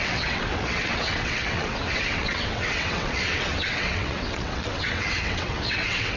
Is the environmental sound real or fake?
fake